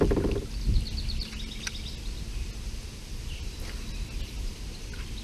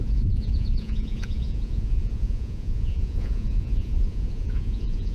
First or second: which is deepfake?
second